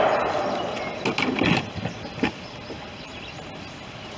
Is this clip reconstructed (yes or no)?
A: no